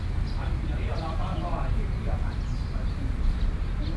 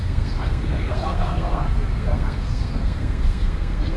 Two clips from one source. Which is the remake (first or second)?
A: second